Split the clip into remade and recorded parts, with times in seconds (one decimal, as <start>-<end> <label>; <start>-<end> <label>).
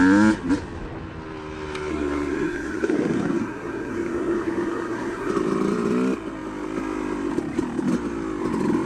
0.0-1.9 recorded; 1.9-5.3 remade; 5.3-8.9 recorded